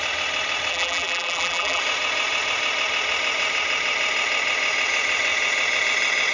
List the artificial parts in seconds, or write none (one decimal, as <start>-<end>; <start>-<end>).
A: 0.7-1.8